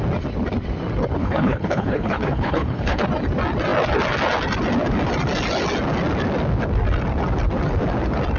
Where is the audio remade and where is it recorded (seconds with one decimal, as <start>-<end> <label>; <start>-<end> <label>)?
0.0-1.2 recorded; 1.2-3.0 remade; 3.0-8.4 recorded